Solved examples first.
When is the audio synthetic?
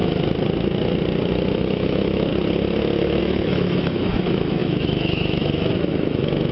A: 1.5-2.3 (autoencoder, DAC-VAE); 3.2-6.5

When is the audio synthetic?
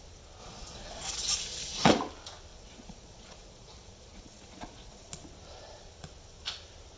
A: 0.4-1.9 (vocoder, Vocos); 2.5-5.1